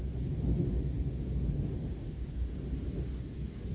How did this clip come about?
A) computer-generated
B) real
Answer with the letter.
B